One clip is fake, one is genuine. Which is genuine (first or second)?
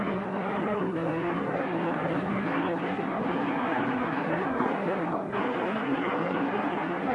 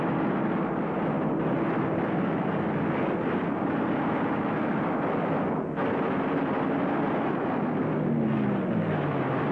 second